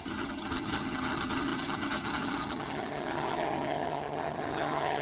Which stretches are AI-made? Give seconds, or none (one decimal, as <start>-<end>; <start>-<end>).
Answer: 0.0-5.0